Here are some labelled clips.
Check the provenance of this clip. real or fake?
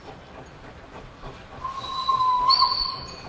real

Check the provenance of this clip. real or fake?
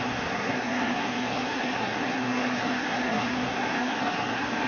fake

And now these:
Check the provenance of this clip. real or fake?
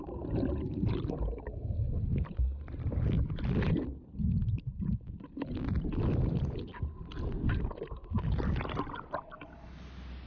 real